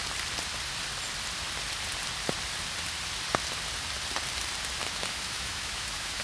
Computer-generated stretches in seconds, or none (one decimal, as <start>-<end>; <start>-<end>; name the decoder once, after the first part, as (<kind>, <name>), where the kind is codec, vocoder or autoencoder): 4.8-6.2 (autoencoder, DAC-VAE)